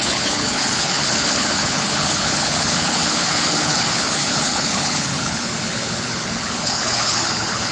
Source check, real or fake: fake